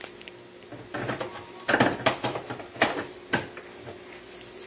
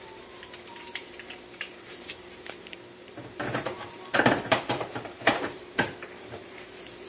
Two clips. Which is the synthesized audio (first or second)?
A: second